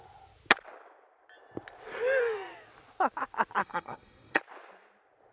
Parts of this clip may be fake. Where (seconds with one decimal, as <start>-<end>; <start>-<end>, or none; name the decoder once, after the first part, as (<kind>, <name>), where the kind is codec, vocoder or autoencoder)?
3.6-4.4 (codec, SNAC)